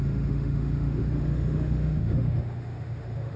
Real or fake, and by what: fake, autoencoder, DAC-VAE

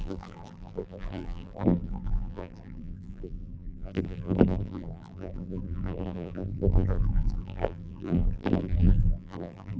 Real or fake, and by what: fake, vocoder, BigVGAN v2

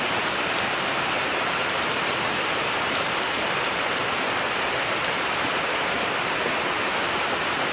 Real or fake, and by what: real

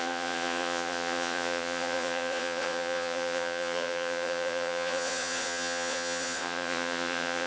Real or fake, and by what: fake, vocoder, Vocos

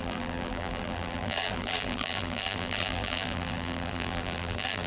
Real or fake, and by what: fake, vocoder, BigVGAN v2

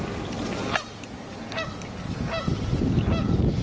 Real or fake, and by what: real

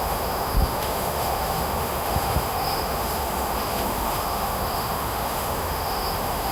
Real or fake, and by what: fake, autoencoder, DAC-VAE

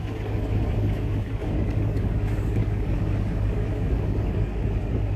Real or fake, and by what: fake, codec, DAC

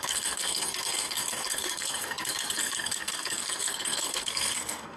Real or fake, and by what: fake, codec, SNAC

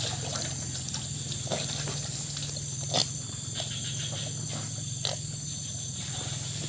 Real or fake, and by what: real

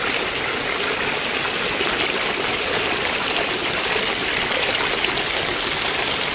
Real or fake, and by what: real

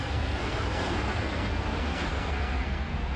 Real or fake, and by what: fake, codec, SNAC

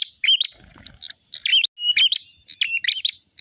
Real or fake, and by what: real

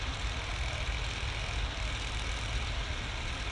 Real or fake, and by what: real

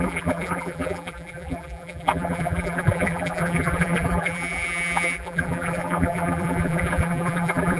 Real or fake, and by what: fake, vocoder, BigVGAN v2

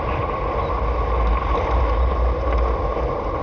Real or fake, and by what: real